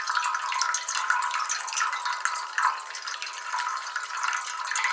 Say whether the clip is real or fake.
real